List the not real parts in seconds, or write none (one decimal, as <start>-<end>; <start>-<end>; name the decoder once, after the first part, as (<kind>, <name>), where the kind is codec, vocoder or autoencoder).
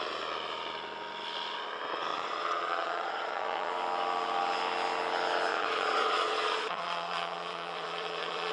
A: 2.1-3.7 (vocoder, Vocos); 5.5-8.5